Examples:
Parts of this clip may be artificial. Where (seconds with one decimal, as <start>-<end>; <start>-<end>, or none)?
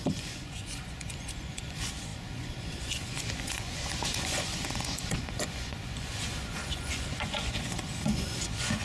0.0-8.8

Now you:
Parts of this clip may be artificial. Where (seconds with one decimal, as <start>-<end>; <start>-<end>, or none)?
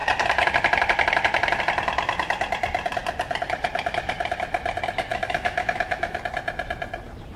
5.1-6.2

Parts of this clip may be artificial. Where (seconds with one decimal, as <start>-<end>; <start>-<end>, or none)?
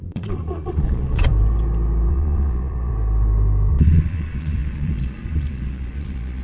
0.0-1.3; 2.1-2.9; 3.7-6.4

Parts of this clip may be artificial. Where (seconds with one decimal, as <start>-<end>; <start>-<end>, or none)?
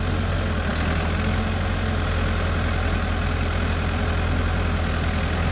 none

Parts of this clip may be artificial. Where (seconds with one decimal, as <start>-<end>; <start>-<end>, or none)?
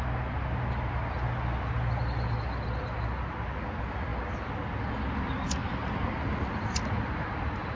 none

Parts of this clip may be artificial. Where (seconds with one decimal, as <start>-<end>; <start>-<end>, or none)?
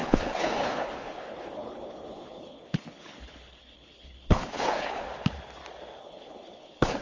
0.0-5.1; 6.0-7.0